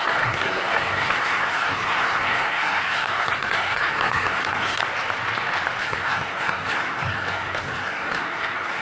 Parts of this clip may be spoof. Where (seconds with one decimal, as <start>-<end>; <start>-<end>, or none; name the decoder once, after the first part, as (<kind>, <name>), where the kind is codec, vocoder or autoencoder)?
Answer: 0.0-4.8 (codec, SNAC); 5.8-8.8